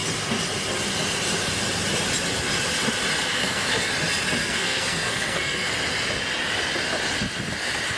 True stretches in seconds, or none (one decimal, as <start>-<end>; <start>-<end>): 0.0-3.3; 3.9-4.4; 5.7-8.0